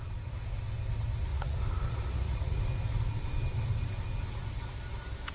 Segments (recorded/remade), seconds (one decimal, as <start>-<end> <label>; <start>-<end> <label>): 0.0-1.3 recorded; 1.3-2.6 remade; 2.6-5.3 recorded